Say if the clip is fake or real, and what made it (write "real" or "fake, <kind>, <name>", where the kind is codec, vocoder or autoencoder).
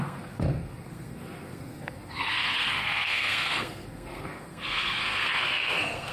fake, codec, SNAC